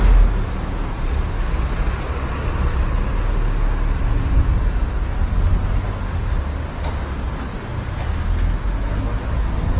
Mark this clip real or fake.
real